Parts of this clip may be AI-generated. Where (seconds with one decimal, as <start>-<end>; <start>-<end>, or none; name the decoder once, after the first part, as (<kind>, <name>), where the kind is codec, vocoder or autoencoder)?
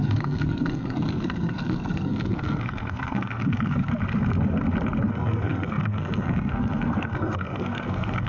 0.0-3.9 (codec, SNAC); 5.1-8.3